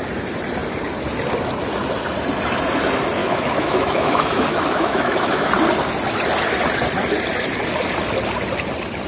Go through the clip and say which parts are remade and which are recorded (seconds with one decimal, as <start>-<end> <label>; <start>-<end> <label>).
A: 0.0-3.2 recorded; 3.2-5.5 remade; 5.5-9.1 recorded